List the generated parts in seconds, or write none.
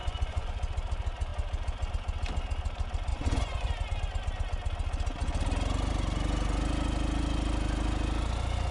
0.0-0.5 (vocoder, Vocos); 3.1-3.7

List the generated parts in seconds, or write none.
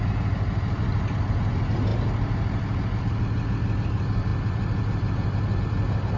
none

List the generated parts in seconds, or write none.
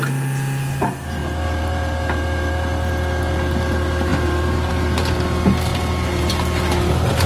none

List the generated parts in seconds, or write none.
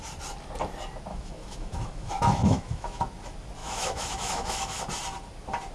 1.1-3.0 (autoencoder, DAC-VAE); 3.6-4.8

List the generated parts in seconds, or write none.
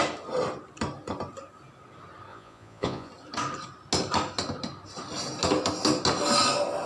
2.3-3.1 (vocoder, Vocos)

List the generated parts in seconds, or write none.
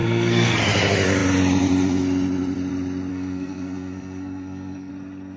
0.0-0.6 (codec, SNAC); 3.1-4.9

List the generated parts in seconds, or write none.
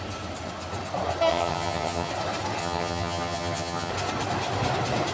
1.3-2.1 (vocoder, HiFi-GAN); 2.6-3.9